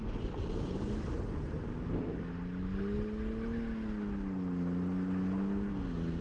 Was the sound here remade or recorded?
recorded